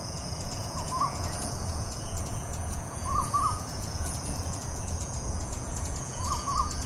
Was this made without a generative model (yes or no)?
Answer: no